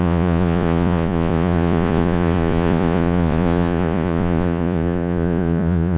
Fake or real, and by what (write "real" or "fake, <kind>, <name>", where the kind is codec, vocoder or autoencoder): fake, vocoder, Vocos